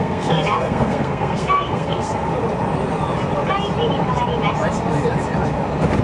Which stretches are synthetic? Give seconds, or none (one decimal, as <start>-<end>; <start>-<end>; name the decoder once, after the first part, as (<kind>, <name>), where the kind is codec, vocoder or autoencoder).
0.0-2.3 (codec, SNAC)